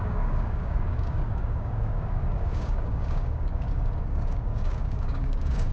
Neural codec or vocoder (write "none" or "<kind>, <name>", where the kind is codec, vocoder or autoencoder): codec, DAC